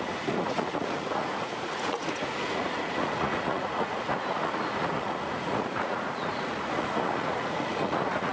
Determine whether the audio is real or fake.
fake